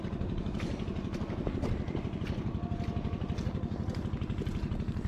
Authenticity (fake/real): real